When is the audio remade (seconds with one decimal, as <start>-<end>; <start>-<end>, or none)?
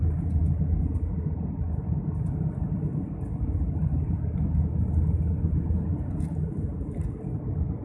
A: none